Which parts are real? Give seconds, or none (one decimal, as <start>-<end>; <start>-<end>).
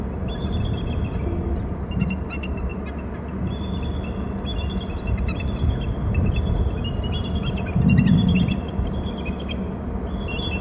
0.0-10.6